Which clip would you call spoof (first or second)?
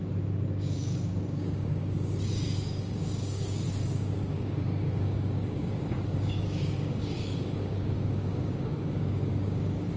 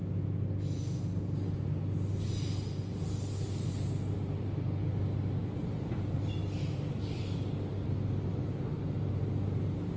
first